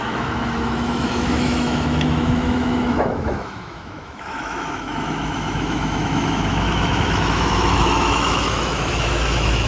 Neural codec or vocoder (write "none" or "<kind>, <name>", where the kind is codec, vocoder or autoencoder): autoencoder, DAC-VAE